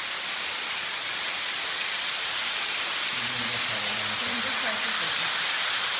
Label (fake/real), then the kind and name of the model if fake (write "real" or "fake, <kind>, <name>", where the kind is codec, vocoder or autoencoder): fake, vocoder, BigVGAN v2